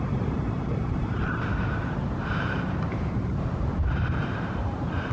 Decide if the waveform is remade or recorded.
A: remade